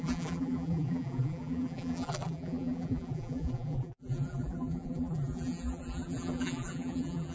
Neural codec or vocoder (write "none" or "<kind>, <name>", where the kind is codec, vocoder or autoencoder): vocoder, BigVGAN v2